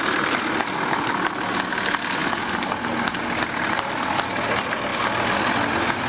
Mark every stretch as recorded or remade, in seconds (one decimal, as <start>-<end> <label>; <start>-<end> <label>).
0.0-6.1 recorded